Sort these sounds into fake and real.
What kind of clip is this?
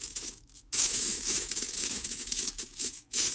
fake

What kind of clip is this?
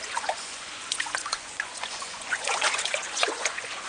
fake